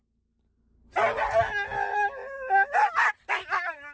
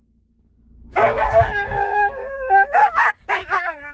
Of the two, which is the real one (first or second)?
first